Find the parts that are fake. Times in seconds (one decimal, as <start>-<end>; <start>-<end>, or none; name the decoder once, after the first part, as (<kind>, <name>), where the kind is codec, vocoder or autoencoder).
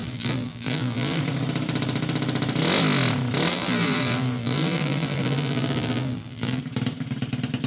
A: 0.0-1.2 (vocoder, BigVGAN v2); 3.5-6.6